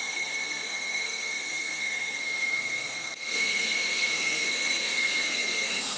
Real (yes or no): no